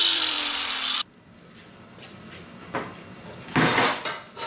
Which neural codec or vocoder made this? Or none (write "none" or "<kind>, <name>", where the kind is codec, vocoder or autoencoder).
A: vocoder, BigVGAN v2